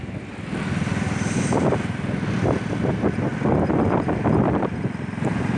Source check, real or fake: fake